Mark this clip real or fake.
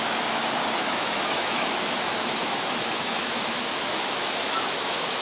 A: fake